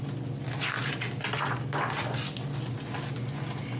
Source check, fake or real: real